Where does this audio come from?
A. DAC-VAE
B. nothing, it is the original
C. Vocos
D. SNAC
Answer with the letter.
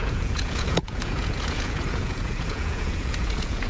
C